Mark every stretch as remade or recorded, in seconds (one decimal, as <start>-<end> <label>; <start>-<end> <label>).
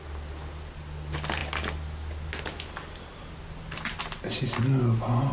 0.0-5.3 recorded